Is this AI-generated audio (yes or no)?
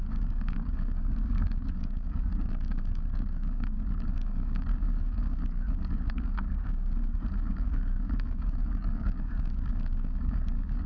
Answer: yes